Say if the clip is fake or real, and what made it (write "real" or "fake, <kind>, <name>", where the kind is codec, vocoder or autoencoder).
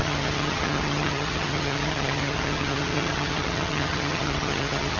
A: fake, vocoder, HiFi-GAN